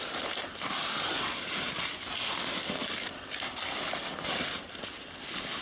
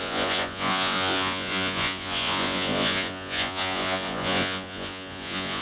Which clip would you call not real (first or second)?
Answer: second